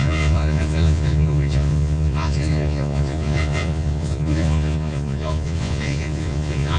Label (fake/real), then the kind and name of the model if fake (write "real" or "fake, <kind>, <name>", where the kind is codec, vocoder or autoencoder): fake, vocoder, Vocos